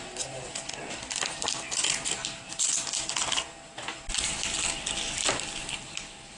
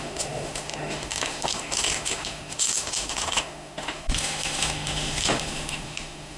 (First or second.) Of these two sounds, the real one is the first